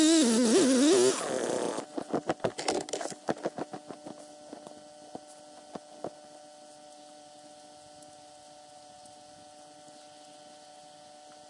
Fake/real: real